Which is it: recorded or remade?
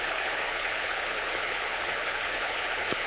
remade